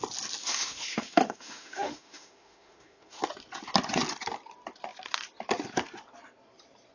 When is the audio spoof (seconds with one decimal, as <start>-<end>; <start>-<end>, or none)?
0.4-3.2